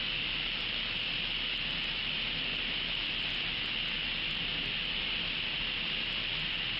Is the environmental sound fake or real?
real